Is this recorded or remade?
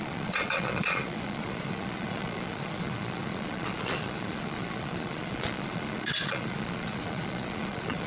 remade